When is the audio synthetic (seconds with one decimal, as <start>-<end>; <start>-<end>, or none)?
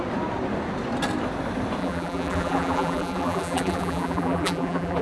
1.8-5.0